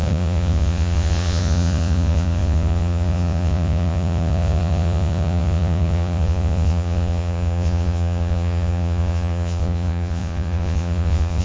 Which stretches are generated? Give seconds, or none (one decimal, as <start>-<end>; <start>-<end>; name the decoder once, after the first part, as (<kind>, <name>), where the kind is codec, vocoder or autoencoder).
0.0-11.4 (vocoder, Vocos)